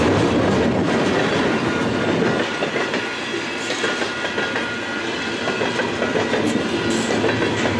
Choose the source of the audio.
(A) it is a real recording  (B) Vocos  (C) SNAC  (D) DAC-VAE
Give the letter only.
A